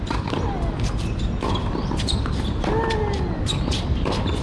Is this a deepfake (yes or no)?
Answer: no